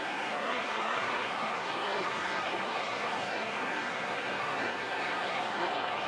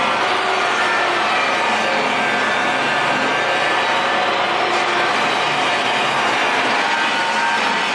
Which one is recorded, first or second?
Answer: second